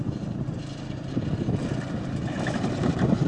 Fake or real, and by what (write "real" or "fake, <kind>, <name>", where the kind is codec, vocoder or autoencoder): fake, vocoder, BigVGAN v2